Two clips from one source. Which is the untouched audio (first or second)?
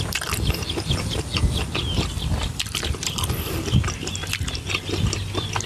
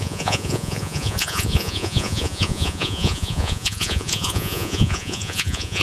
first